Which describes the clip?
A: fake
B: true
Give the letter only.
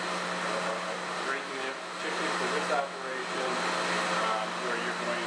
B